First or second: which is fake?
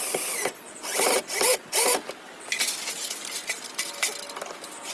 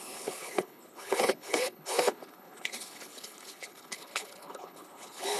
second